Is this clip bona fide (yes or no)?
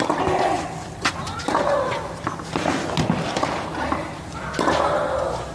yes